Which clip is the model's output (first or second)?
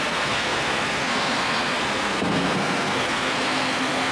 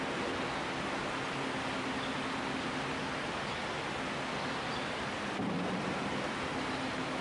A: first